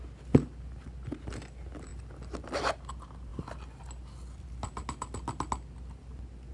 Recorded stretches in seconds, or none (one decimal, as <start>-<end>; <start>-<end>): 0.0-6.5